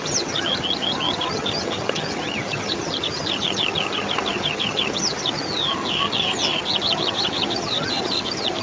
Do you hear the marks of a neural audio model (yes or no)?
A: yes